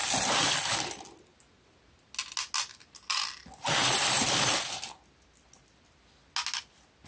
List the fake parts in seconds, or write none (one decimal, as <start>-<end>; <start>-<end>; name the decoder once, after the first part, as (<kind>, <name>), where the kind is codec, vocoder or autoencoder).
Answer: none